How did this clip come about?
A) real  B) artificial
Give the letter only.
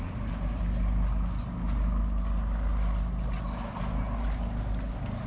A